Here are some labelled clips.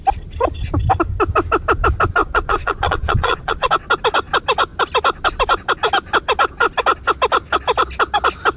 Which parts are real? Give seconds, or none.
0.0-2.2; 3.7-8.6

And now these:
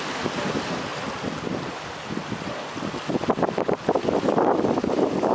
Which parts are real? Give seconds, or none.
0.0-5.3